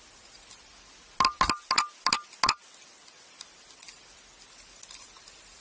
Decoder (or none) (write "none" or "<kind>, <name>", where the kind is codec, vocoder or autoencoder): none